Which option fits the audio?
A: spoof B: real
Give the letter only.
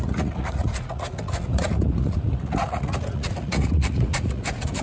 A